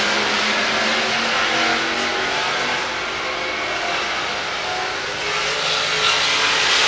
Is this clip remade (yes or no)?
no